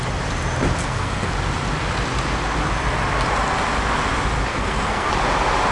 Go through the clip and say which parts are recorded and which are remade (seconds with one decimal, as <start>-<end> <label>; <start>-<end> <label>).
0.0-0.8 recorded; 0.8-1.3 remade; 1.3-4.5 recorded; 4.5-5.1 remade; 5.1-5.7 recorded